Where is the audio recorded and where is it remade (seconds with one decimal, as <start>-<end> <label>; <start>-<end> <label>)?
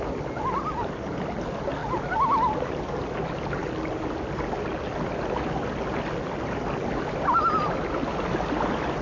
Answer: 0.0-9.0 recorded